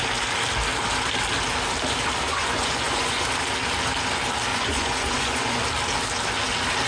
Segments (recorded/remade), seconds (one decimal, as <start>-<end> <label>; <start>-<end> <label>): 0.0-2.3 recorded; 2.3-3.2 remade; 3.2-4.5 recorded; 4.5-5.6 remade; 5.6-6.9 recorded